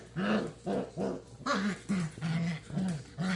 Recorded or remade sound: recorded